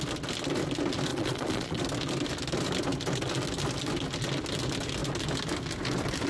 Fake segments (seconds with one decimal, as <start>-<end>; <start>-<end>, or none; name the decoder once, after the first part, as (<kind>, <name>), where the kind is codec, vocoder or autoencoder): 1.1-1.8 (vocoder, Vocos)